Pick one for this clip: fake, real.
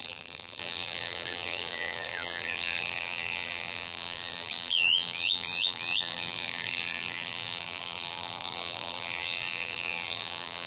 fake